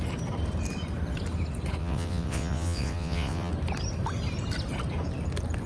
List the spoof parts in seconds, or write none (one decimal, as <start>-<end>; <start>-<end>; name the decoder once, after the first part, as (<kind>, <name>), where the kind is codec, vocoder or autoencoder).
1.8-3.5 (vocoder, WaveNeXt)